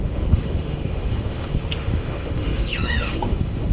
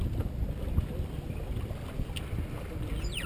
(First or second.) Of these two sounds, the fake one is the first